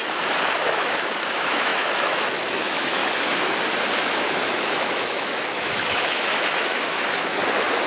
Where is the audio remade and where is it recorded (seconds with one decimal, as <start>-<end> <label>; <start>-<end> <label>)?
0.0-3.0 remade; 3.0-4.0 recorded; 4.0-7.4 remade; 7.4-7.9 recorded